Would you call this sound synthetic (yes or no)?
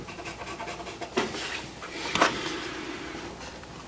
no